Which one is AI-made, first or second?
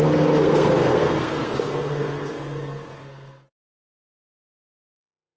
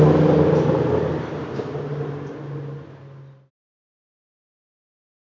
first